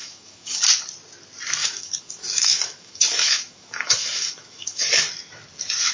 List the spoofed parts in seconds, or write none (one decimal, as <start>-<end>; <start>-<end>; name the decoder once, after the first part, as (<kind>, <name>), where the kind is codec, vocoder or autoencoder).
0.0-0.6 (autoencoder, DAC-VAE); 1.6-5.1